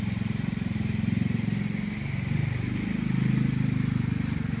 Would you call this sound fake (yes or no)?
no